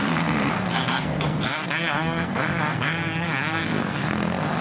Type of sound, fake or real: fake